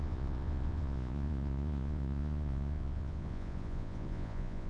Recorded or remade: remade